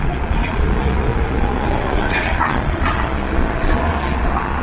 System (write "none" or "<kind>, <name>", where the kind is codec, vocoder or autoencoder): vocoder, Vocos